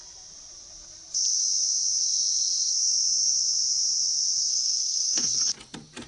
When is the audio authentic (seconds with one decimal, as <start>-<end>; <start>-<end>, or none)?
0.0-4.5; 5.5-6.1